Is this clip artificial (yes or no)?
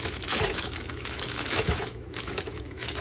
yes